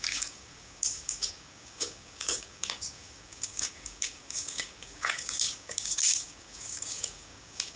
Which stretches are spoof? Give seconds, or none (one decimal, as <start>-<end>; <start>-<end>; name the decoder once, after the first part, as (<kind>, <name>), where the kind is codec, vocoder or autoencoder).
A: 0.0-7.8 (codec, DAC)